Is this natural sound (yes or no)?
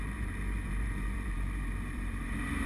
no